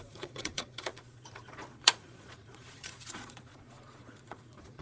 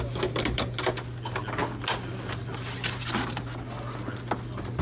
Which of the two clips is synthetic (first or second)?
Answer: first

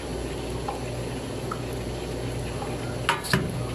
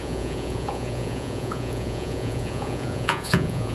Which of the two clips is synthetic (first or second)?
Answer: second